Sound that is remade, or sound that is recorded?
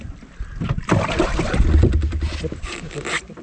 recorded